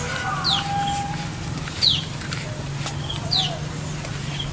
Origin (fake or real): real